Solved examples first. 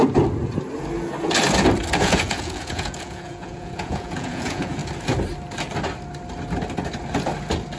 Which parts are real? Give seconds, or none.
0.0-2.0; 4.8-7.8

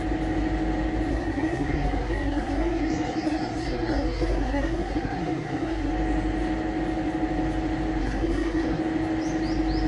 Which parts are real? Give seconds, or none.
0.0-1.1; 5.9-8.0; 8.8-9.9

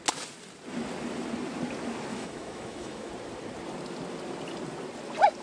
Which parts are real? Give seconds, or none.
0.0-2.1; 3.1-5.4

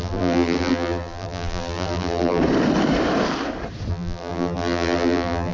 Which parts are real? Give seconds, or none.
2.4-3.9

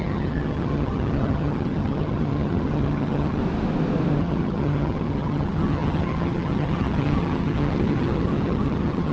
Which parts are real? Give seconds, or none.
3.4-4.2